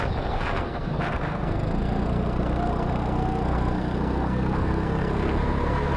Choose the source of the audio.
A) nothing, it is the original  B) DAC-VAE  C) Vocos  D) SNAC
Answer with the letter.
D